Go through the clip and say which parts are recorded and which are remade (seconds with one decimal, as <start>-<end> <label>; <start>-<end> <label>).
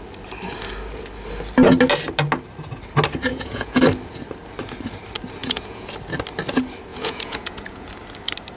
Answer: 0.0-3.3 recorded; 3.3-3.8 remade; 3.8-5.4 recorded; 5.4-5.9 remade; 5.9-6.9 recorded; 6.9-7.9 remade; 7.9-8.6 recorded